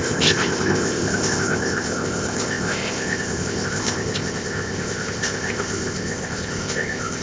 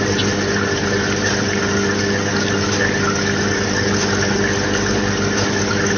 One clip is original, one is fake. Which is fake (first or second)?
first